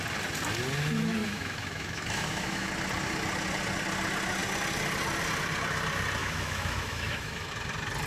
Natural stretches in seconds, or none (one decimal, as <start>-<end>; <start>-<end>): 0.0-1.2; 2.7-6.2; 7.5-8.1